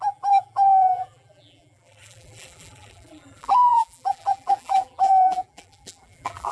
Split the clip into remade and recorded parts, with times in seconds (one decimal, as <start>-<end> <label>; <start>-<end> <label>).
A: 0.0-6.5 remade